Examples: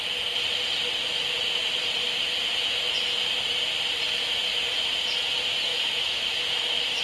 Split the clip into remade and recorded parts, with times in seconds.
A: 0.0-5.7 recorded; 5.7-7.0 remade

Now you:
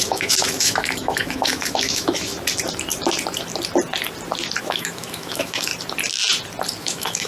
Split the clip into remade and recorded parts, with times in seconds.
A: 0.0-2.3 remade; 2.3-4.6 recorded; 4.6-5.7 remade; 5.7-6.8 recorded; 6.8-7.3 remade

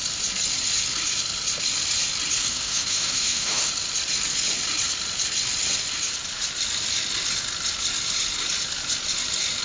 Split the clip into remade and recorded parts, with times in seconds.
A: 0.0-2.4 recorded; 2.4-3.7 remade; 3.7-9.6 recorded

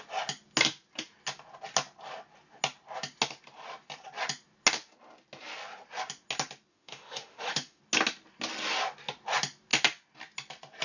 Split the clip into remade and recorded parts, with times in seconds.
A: 0.0-6.7 recorded; 6.7-7.8 remade; 7.8-10.8 recorded

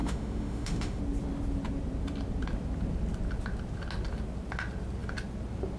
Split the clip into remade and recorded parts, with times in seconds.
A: 0.0-1.0 remade; 1.0-5.8 recorded

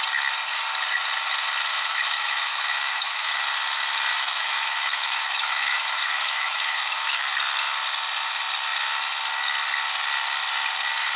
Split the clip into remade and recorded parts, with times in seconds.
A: 0.0-1.7 recorded; 1.7-3.3 remade; 3.3-4.1 recorded; 4.1-7.2 remade; 7.2-11.2 recorded